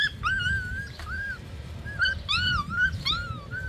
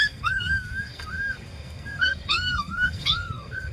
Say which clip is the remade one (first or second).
second